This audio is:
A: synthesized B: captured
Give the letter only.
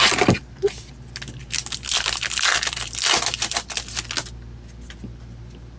B